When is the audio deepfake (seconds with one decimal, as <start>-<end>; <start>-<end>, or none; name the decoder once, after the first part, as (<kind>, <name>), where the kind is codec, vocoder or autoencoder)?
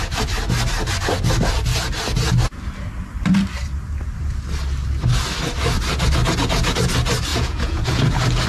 7.3-8.0 (vocoder, Vocos)